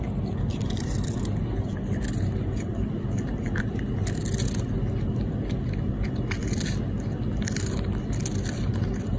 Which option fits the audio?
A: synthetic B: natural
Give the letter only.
B